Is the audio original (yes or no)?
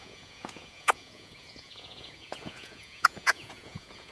no